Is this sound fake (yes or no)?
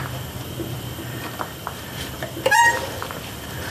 yes